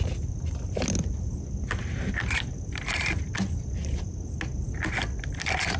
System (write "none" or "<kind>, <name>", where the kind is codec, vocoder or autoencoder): none